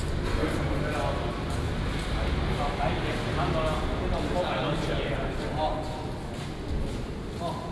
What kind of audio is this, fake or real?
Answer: real